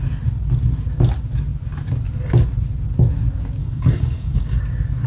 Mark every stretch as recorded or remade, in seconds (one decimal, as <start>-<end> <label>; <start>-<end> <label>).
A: 0.0-3.6 recorded; 3.6-4.6 remade; 4.6-5.1 recorded